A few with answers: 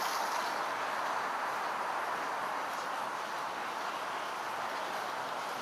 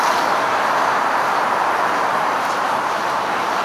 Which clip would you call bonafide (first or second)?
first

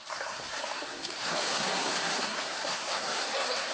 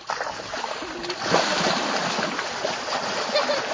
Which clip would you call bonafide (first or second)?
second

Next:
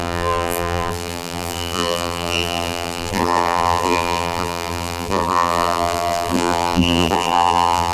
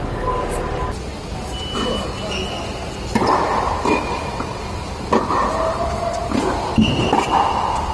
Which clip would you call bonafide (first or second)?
second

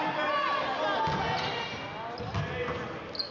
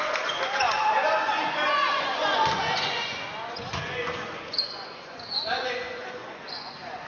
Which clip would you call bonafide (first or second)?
first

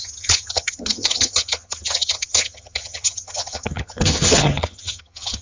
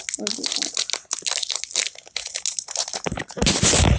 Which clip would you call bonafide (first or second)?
second